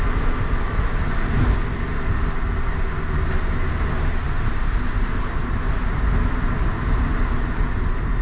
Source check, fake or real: real